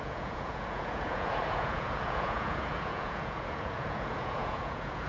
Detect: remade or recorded remade